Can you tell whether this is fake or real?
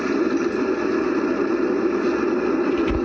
real